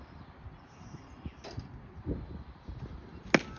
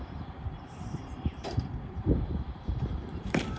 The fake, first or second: second